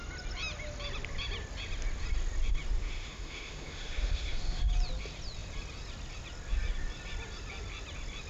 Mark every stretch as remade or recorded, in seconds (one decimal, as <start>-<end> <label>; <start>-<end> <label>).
0.0-2.8 recorded; 2.8-4.6 remade; 4.6-8.3 recorded